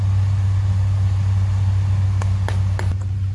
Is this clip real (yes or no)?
yes